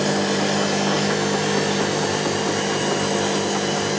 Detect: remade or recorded recorded